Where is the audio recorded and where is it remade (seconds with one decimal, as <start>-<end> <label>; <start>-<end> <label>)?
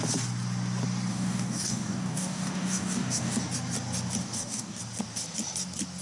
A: 0.0-1.1 recorded; 1.1-3.4 remade; 3.4-4.2 recorded; 4.2-4.8 remade; 4.8-6.0 recorded